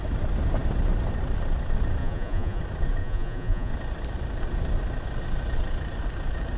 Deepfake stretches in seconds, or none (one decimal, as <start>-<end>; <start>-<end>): 2.0-2.6; 3.0-3.7